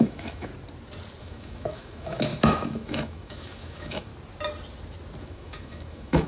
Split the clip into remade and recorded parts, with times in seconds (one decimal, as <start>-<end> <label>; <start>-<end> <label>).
0.0-0.5 remade; 0.5-1.2 recorded; 1.2-4.1 remade; 4.1-5.2 recorded; 5.2-6.3 remade